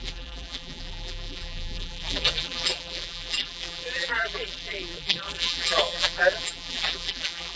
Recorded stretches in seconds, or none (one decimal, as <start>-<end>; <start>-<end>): none